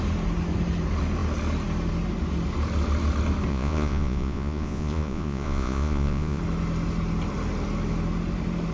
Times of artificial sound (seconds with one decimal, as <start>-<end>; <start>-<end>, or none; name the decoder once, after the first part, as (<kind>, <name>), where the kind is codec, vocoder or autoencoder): 3.5-6.4 (vocoder, Vocos)